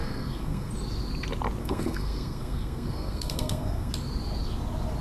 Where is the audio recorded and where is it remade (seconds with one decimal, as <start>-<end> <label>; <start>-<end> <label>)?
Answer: 0.0-0.7 remade; 0.7-1.6 recorded; 1.6-3.9 remade; 3.9-5.0 recorded